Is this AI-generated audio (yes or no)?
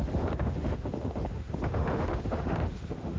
yes